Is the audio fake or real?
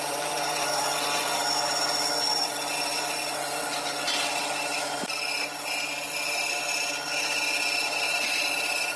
fake